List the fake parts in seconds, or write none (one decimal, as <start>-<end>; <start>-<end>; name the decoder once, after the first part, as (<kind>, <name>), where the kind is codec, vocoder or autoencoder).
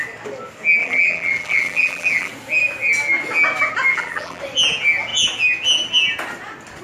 0.8-2.3 (vocoder, BigVGAN v2); 3.9-4.4